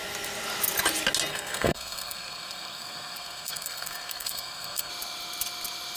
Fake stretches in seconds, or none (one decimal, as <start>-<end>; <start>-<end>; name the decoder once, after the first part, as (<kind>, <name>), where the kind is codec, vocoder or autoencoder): 1.3-4.9 (codec, SNAC)

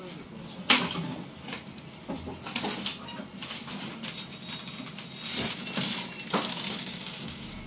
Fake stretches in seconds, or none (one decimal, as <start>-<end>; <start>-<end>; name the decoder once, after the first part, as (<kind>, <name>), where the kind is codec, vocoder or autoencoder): 6.8-7.7 (codec, DAC)

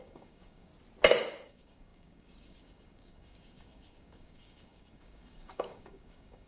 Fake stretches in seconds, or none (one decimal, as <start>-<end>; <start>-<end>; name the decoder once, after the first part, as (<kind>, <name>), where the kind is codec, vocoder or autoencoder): 0.0-0.7 (codec, DAC); 1.5-6.5

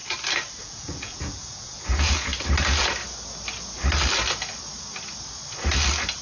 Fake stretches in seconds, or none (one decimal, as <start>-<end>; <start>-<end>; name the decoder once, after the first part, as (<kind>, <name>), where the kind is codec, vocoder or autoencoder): 0.6-2.3 (vocoder, Vocos)